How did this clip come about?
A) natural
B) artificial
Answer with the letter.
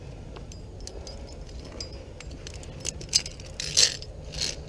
A